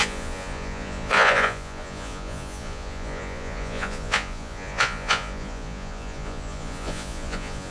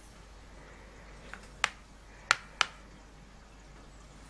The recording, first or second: second